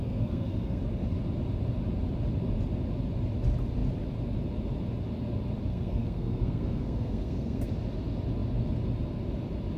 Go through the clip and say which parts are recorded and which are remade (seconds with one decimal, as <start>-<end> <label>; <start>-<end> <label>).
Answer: 0.0-0.8 remade; 0.8-5.7 recorded; 5.7-7.7 remade; 7.7-9.8 recorded